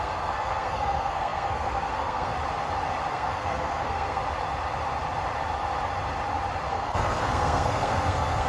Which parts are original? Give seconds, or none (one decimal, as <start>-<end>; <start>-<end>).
2.3-3.1; 4.2-6.7